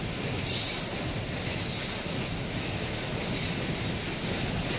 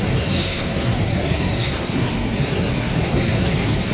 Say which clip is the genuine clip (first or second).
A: first